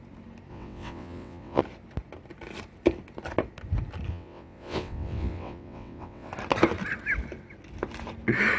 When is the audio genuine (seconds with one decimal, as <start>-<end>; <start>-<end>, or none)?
0.0-0.5; 1.6-4.1; 6.3-8.6